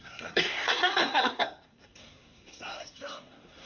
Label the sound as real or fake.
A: fake